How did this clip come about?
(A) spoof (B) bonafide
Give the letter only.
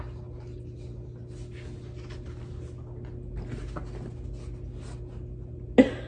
B